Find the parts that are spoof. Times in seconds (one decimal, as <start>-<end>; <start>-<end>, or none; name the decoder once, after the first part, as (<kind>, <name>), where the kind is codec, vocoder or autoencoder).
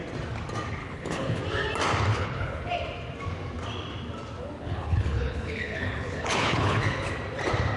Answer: 0.8-1.4 (codec, HILCodec); 2.1-2.7; 4.4-7.1